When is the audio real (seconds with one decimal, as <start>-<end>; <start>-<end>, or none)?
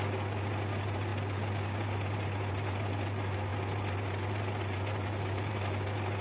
0.0-6.2